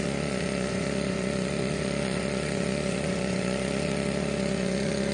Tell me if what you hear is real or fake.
fake